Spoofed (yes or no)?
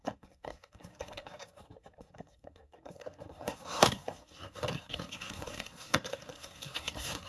yes